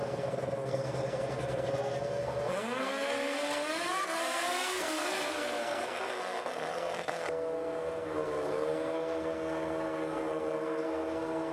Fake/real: fake